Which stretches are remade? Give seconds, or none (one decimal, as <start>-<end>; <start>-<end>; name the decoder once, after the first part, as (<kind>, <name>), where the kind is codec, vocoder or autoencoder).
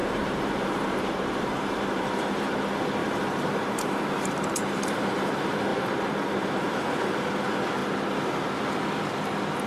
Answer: 0.0-2.5 (vocoder, BigVGAN v2); 3.0-5.3; 5.7-7.1